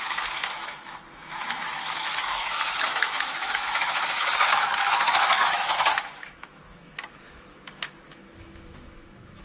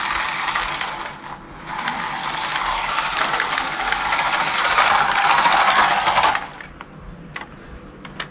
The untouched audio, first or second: second